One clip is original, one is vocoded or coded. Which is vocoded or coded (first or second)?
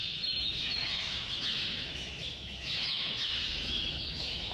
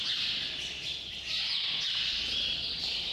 first